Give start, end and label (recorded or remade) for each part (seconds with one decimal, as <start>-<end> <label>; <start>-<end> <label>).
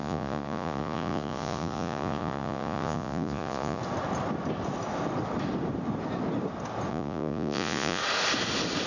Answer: 0.0-3.8 remade; 3.8-6.9 recorded; 6.9-8.0 remade; 8.0-8.9 recorded